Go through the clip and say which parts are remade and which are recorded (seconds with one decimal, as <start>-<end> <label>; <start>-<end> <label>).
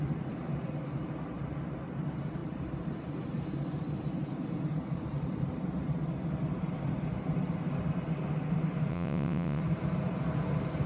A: 0.0-8.9 recorded; 8.9-9.6 remade; 9.6-10.9 recorded